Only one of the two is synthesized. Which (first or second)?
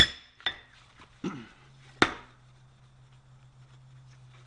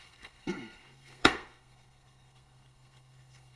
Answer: second